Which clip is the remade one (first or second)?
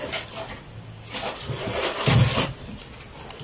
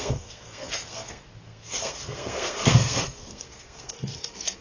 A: second